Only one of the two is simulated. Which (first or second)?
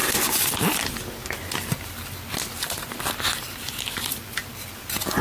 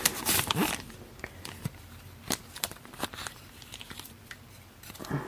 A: second